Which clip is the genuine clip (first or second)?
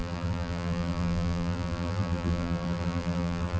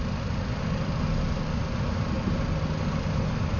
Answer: second